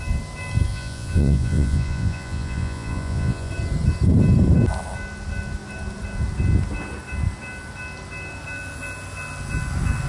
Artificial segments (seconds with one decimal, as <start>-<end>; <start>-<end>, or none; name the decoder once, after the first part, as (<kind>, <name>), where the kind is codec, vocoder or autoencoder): 0.7-3.5 (vocoder, Vocos)